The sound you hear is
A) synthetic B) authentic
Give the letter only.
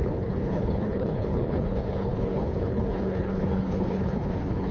A